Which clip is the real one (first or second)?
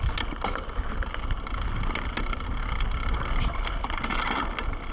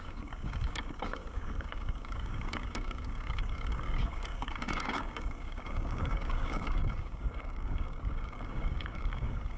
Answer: first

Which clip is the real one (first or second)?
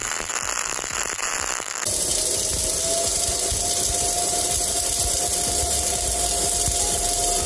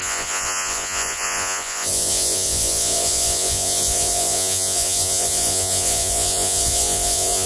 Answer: first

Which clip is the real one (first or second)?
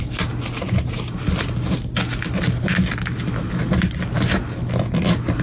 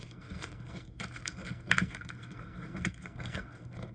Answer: first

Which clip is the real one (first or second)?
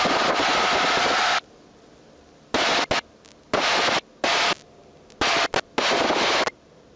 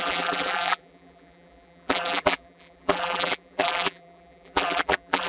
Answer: first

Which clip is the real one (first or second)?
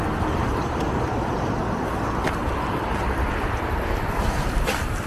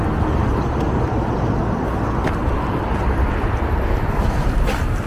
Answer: second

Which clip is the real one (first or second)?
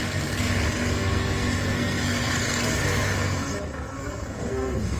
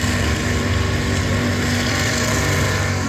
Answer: second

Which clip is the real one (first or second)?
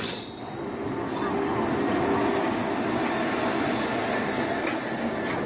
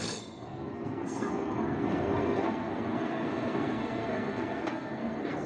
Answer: first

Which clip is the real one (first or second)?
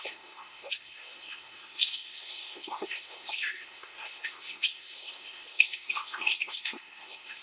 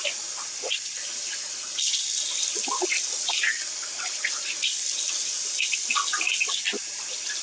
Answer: second